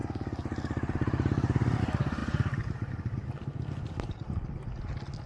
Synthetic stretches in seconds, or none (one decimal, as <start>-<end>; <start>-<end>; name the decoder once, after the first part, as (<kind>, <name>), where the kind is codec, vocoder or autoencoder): none